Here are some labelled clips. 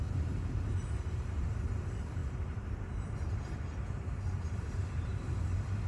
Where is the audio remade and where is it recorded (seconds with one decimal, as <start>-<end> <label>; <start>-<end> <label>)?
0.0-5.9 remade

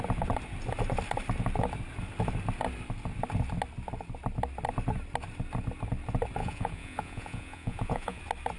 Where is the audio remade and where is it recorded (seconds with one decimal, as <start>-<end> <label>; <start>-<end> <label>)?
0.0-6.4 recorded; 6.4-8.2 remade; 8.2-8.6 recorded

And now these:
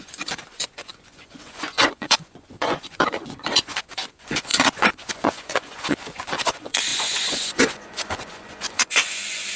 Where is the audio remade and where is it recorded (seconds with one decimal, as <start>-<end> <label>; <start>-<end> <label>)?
0.0-9.6 remade